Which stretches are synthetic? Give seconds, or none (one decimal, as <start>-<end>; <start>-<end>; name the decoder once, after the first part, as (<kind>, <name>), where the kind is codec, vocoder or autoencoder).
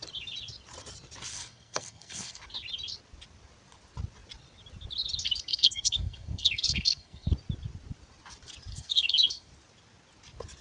1.3-2.4 (codec, SNAC); 5.5-7.3; 8.7-9.5